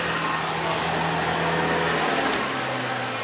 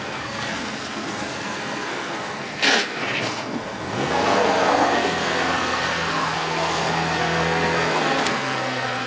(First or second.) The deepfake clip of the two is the second